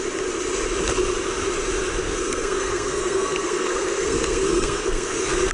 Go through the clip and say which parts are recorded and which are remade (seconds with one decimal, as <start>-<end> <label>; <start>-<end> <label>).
0.0-2.0 recorded; 2.0-5.5 remade